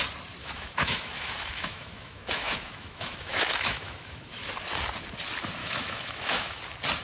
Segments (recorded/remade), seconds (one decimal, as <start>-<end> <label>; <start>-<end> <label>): 0.0-0.4 recorded; 0.4-4.5 remade; 4.5-5.6 recorded; 5.6-6.6 remade; 6.6-7.0 recorded